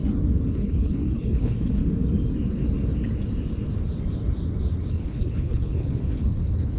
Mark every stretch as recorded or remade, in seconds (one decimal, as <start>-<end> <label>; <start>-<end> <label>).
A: 0.0-0.5 recorded; 0.5-1.8 remade; 1.8-4.9 recorded; 4.9-6.8 remade